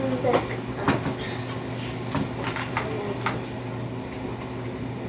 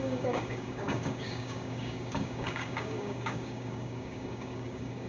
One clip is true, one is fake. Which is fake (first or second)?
second